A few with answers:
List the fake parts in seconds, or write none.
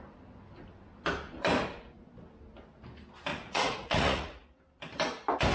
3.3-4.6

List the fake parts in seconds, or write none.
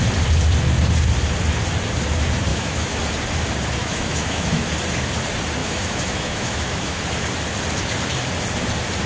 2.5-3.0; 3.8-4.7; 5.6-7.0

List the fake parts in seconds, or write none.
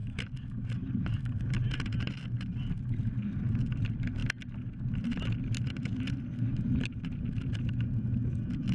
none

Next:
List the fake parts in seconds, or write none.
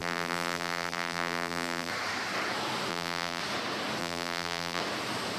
0.0-1.9; 2.9-3.4; 4.0-4.8